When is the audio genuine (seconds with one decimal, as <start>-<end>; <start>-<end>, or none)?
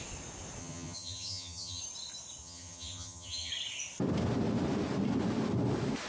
0.0-0.6; 1.8-2.4; 3.5-6.1